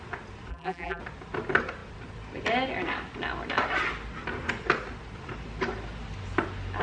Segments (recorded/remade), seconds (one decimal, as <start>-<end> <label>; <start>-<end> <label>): 0.0-0.5 recorded; 0.5-1.0 remade; 1.0-6.8 recorded